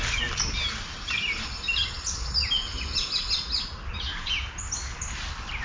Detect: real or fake real